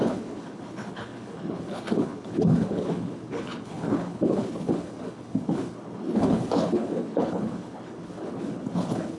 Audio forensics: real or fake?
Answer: fake